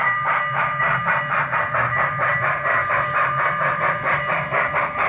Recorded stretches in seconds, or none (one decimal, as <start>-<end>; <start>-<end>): none